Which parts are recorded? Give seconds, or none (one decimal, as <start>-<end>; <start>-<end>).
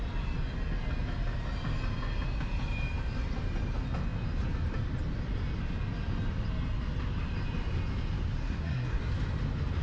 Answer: 0.0-8.4; 9.0-9.8